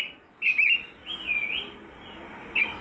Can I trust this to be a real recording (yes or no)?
yes